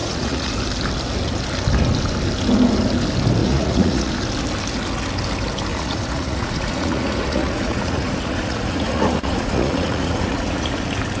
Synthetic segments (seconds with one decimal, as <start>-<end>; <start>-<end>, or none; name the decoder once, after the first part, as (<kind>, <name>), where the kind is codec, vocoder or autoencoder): 0.0-0.5 (vocoder, Vocos); 3.4-4.1; 5.7-10.7